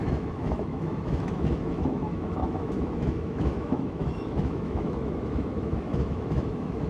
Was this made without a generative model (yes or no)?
no